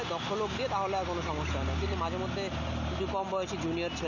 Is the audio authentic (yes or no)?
yes